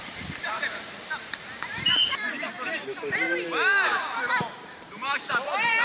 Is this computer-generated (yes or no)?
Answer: yes